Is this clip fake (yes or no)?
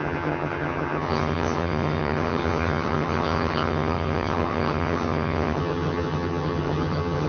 yes